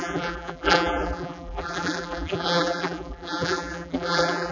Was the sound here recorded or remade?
remade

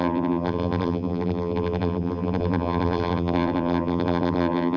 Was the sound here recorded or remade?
remade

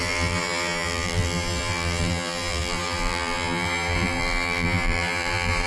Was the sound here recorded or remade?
remade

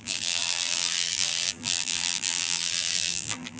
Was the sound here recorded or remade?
remade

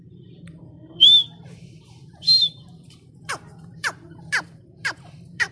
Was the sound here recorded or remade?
remade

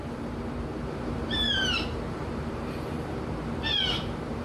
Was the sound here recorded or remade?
remade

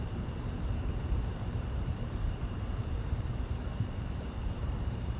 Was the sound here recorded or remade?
remade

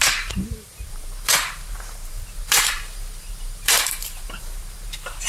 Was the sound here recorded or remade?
remade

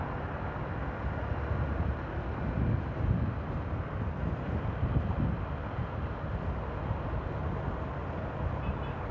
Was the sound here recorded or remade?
recorded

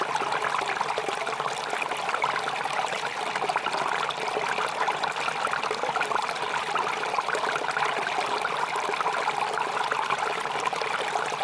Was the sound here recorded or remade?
recorded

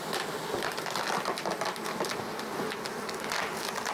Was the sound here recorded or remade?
recorded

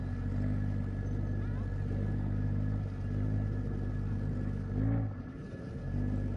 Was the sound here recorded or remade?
recorded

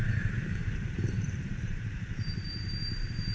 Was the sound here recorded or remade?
remade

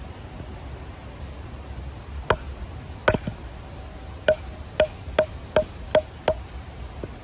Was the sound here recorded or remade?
recorded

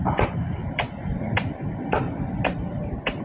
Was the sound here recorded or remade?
remade